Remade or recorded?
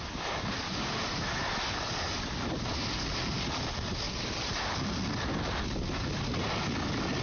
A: recorded